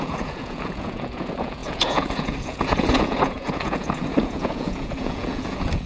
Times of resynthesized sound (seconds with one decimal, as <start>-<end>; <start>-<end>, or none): 0.0-5.9